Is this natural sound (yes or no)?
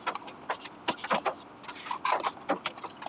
yes